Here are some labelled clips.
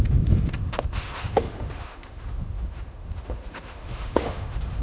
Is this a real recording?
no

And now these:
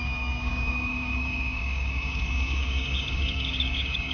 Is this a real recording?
no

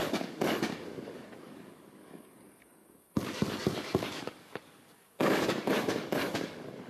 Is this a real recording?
no